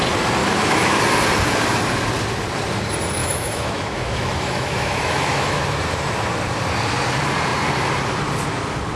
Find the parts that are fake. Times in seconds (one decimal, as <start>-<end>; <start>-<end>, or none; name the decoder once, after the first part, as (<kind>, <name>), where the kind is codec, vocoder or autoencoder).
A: 0.4-1.0 (autoencoder, DAC-VAE); 3.2-5.6